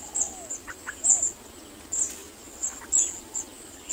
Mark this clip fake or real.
real